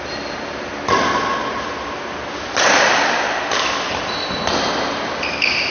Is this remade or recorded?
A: recorded